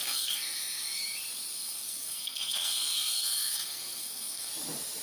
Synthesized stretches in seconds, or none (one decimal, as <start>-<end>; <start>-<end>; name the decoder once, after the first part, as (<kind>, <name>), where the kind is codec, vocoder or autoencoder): 0.0-1.0 (codec, SNAC); 1.5-4.5